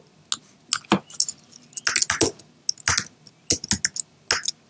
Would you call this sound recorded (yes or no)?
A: yes